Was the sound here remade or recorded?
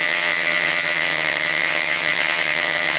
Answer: remade